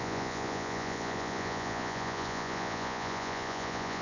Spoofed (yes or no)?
yes